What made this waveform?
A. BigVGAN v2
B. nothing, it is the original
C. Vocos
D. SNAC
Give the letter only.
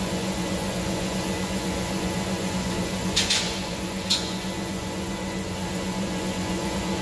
C